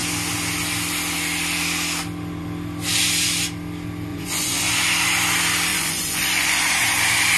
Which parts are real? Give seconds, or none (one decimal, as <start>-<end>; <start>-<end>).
0.0-4.1; 4.7-5.7; 6.7-7.4